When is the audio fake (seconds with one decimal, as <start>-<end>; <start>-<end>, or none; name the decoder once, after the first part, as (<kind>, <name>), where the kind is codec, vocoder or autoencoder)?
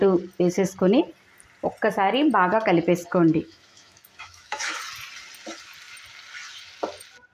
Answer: 3.1-4.8 (autoencoder, DAC-VAE)